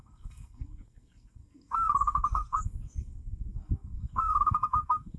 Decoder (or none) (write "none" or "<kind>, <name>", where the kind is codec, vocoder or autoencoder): codec, SNAC